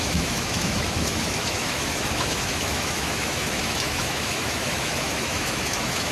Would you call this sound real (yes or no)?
no